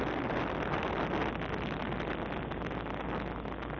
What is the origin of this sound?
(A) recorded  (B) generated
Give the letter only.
A